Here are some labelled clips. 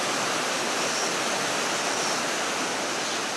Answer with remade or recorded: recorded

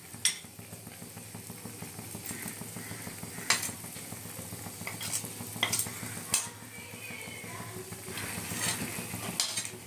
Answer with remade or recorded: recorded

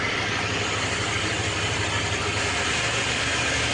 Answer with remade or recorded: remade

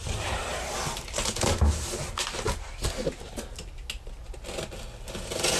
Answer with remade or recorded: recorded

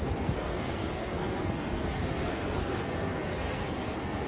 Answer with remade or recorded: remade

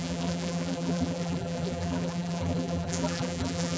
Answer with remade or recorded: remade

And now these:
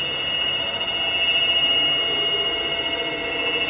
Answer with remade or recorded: recorded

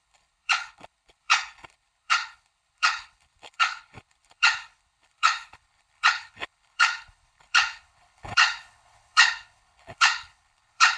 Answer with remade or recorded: remade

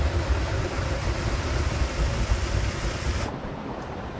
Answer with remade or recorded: recorded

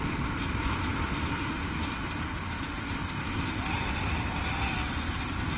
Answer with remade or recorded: recorded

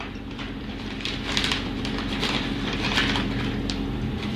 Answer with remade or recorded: remade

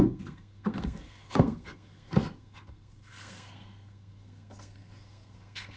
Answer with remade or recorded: remade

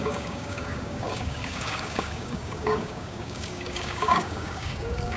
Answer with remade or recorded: remade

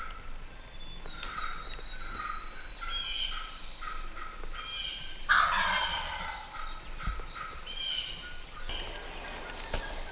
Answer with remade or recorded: recorded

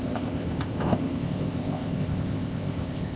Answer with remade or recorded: remade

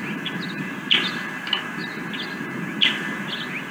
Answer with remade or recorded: recorded